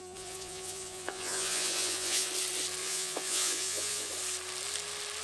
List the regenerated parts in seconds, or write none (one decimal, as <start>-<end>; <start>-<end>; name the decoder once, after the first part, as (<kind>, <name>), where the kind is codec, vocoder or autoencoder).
0.0-2.3 (vocoder, Vocos); 2.8-4.1